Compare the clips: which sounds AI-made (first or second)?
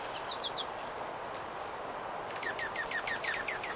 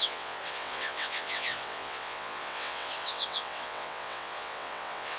second